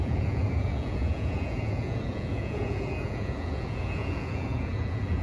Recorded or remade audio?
remade